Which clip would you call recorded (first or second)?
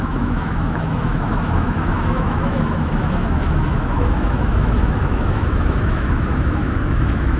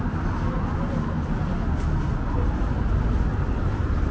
second